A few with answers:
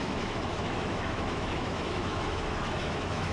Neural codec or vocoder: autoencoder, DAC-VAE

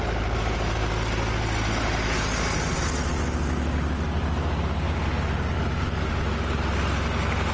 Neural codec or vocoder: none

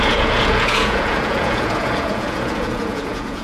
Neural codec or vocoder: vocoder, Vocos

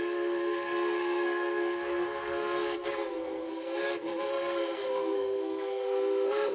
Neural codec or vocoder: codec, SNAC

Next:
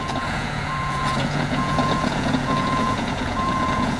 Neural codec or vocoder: vocoder, Vocos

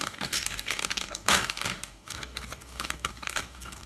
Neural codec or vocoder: codec, DAC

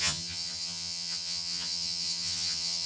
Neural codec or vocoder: vocoder, HiFi-GAN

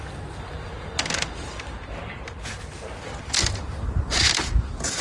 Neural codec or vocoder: none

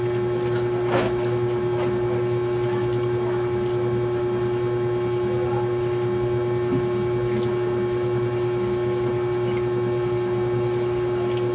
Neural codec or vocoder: none